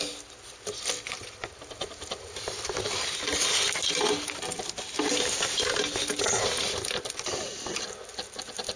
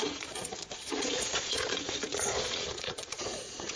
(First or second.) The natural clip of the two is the first